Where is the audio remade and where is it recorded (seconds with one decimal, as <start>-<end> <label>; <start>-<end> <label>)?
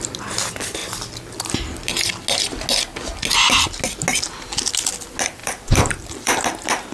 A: 0.0-5.4 recorded; 5.4-6.4 remade; 6.4-6.9 recorded